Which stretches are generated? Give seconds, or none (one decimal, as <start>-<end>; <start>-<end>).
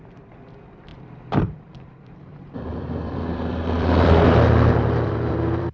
0.0-5.7